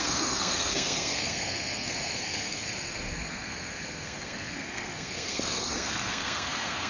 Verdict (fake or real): fake